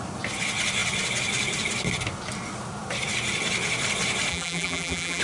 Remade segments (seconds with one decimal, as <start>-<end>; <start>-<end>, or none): 4.3-5.2